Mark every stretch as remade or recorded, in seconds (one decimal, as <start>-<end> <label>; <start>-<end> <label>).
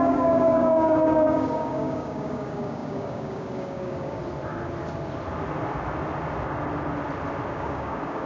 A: 0.0-4.2 remade; 4.2-7.5 recorded; 7.5-8.3 remade